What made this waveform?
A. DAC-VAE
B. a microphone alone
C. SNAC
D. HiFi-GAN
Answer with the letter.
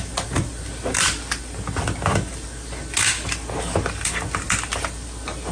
B